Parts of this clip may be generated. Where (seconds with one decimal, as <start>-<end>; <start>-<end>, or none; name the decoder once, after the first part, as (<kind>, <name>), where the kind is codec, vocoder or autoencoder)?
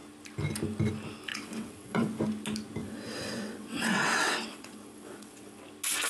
1.3-2.2 (vocoder, WaveNeXt); 2.8-5.6